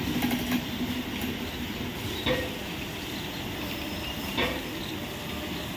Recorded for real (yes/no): yes